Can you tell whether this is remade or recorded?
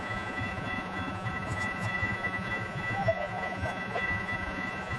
remade